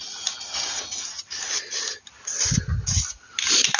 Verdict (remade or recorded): recorded